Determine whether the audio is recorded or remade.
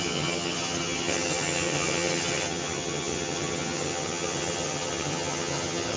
remade